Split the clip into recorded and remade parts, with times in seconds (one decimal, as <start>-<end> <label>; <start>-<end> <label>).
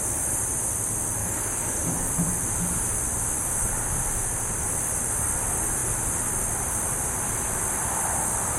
0.0-1.2 recorded; 1.2-2.1 remade; 2.1-8.6 recorded